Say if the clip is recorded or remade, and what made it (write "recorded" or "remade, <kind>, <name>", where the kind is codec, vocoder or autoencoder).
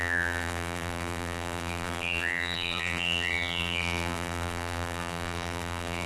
remade, vocoder, BigVGAN v2